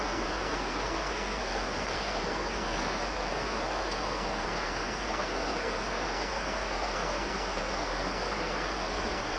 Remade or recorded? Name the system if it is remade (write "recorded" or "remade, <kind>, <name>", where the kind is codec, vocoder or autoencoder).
remade, codec, SNAC